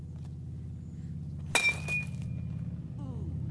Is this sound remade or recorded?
recorded